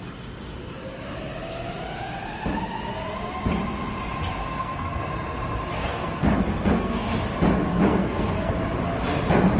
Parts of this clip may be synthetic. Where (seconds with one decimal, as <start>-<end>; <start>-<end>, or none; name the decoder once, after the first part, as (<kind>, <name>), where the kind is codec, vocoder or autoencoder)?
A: 4.4-5.0 (codec, SNAC); 5.8-7.1; 7.7-8.5